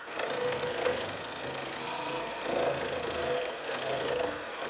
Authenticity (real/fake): fake